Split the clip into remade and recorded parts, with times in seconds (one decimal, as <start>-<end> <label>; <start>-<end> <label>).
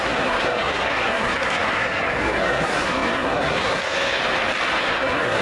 0.0-4.2 remade; 4.2-4.8 recorded; 4.8-5.4 remade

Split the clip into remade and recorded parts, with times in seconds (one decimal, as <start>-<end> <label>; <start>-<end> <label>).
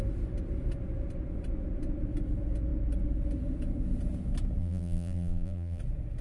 0.0-4.6 recorded; 4.6-5.8 remade; 5.8-6.2 recorded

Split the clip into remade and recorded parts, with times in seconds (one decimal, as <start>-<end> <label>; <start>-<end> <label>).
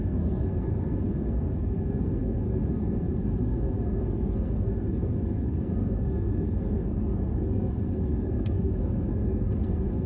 0.0-10.1 remade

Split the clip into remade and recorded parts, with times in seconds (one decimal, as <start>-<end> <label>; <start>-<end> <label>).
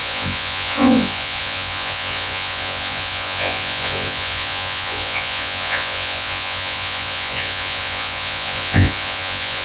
0.0-9.6 remade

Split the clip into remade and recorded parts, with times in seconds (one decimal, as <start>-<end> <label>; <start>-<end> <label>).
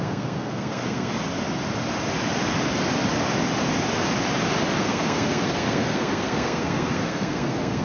0.0-1.1 remade; 1.1-4.8 recorded; 4.8-7.8 remade